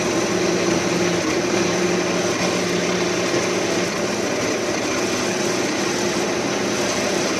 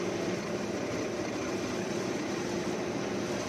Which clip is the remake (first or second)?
second